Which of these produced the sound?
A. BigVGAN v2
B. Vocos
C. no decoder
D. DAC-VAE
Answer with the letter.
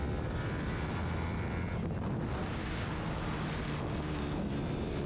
C